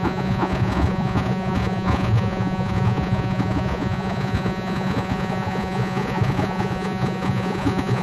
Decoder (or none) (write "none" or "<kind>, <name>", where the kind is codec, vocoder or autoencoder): vocoder, Vocos